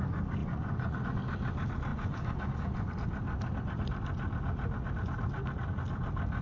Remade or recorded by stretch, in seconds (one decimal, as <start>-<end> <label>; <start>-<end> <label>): 0.0-0.4 recorded; 0.4-1.2 remade; 1.2-1.9 recorded; 1.9-2.9 remade; 2.9-6.4 recorded